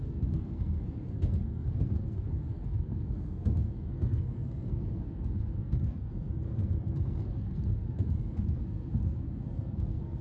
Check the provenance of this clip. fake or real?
fake